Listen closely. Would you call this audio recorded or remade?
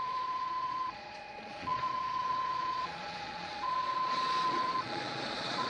remade